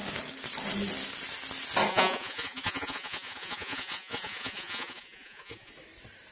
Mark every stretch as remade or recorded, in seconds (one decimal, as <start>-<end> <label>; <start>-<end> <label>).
0.0-1.9 recorded; 1.9-5.7 remade; 5.7-6.3 recorded